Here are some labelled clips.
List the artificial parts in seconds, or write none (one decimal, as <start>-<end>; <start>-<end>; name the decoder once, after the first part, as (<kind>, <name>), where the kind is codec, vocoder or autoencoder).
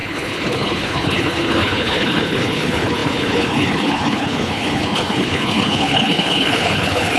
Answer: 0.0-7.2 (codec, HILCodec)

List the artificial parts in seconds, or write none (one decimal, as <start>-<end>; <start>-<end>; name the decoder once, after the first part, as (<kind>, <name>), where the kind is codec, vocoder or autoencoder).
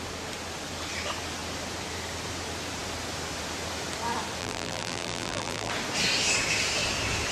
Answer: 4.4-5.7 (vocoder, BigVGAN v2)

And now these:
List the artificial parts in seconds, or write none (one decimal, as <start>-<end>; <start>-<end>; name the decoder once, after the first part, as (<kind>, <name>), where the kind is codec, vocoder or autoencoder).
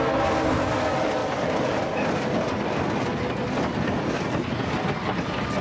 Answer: none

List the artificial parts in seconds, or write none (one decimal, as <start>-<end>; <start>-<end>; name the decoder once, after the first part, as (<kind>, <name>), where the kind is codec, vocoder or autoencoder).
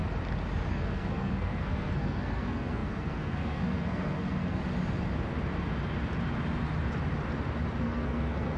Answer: 0.7-4.6 (codec, SNAC); 7.8-8.6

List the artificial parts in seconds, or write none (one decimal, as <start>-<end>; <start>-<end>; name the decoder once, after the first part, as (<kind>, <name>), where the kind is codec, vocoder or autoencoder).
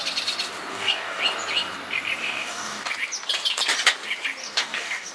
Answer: 0.7-1.2 (codec, DAC); 2.2-2.9; 4.4-5.1